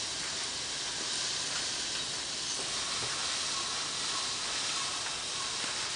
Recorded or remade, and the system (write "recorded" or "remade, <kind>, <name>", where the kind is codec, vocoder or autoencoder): recorded